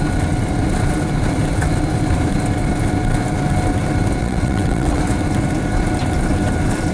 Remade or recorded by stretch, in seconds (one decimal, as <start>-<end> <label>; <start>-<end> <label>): 0.0-4.2 recorded; 4.2-5.0 remade; 5.0-6.9 recorded